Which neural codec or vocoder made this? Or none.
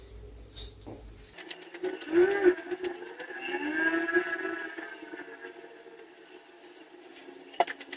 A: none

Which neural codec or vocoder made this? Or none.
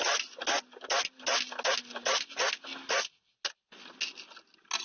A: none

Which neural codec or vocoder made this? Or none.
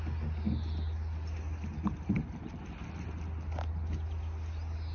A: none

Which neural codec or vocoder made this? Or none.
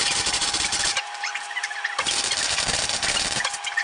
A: vocoder, BigVGAN v2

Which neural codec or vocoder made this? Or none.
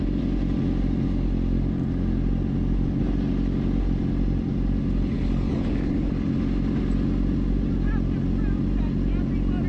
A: none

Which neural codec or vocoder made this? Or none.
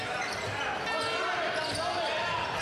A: none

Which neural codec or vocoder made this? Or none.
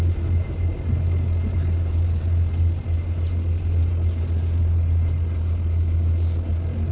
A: none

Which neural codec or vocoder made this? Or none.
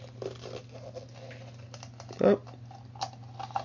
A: none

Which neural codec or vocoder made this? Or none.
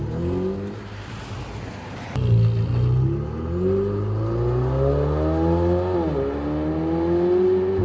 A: none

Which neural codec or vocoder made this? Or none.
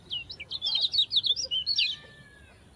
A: none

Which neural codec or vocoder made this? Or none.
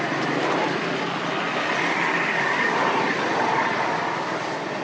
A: none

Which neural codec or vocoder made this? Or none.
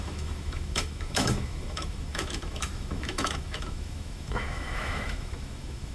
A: autoencoder, DAC-VAE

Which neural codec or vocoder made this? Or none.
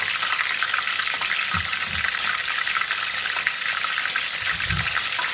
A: none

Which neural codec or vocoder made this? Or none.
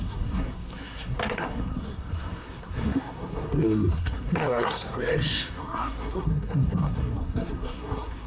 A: codec, SNAC